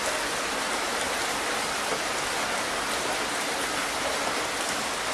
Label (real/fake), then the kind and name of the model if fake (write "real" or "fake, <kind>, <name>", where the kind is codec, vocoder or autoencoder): real